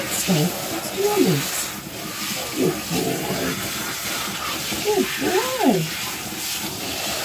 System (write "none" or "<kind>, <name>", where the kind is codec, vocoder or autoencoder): none